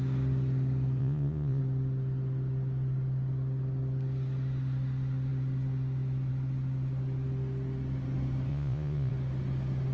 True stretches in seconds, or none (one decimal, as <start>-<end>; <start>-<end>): 0.0-1.0; 1.6-8.5; 9.1-9.9